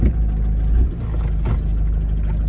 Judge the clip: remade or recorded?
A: recorded